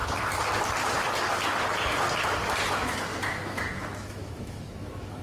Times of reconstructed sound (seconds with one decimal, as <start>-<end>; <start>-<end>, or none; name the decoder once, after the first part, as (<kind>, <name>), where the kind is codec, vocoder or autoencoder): 2.7-5.2 (autoencoder, DAC-VAE)